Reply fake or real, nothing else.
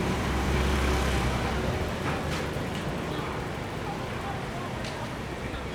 fake